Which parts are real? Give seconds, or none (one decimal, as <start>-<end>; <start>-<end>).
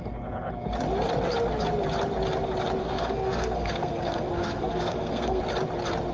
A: 0.0-2.8; 5.4-6.1